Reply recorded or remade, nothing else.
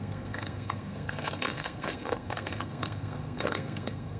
remade